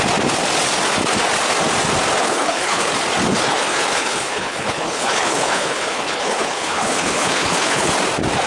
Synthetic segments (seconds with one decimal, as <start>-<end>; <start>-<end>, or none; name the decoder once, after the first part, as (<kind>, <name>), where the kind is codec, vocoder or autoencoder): 2.2-2.9 (codec, HILCodec); 3.3-7.9